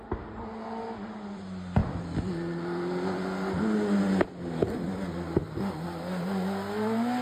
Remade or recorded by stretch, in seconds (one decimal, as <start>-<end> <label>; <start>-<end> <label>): 0.0-7.2 recorded